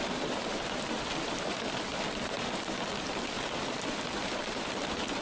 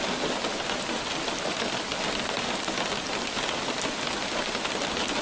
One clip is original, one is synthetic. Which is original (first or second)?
second